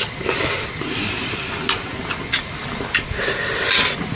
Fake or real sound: real